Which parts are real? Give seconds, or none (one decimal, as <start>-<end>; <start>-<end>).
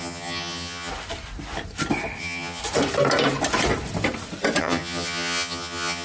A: 0.9-2.2; 2.6-4.6